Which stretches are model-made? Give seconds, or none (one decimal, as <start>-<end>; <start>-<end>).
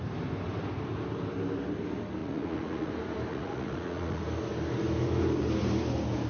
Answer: 2.2-2.9; 3.3-4.2